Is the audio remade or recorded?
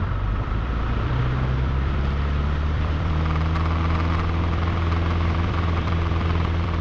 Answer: remade